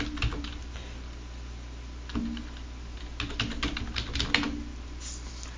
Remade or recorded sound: recorded